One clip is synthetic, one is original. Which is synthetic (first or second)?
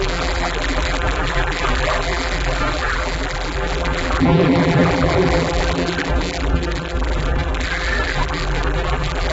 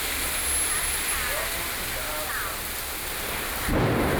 first